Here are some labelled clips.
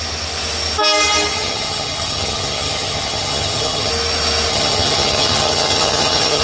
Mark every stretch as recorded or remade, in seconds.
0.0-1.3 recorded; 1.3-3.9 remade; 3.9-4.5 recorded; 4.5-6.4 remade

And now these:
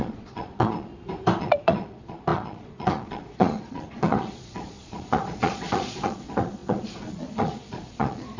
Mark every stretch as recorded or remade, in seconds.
0.0-0.9 remade; 0.9-1.4 recorded; 1.4-8.4 remade

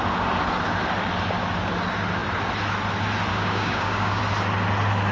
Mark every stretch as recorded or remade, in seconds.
0.0-3.3 recorded; 3.3-4.2 remade; 4.2-5.1 recorded